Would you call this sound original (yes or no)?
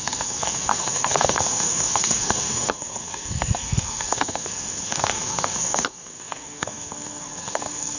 no